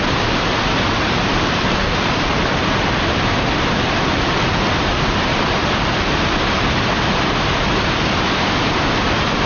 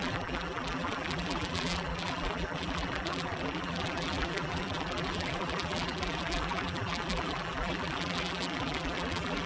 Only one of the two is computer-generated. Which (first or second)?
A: second